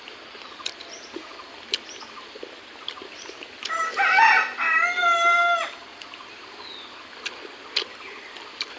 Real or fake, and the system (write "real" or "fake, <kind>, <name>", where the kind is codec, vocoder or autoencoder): real